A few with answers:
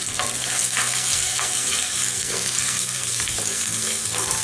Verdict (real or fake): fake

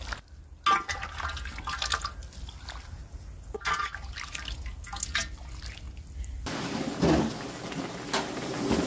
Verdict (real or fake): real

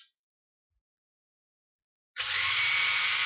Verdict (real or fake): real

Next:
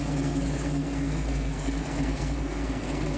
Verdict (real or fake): fake